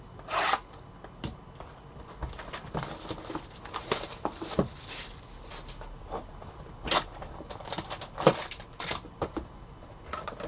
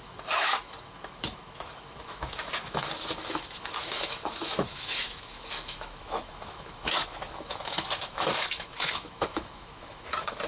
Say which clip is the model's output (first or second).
second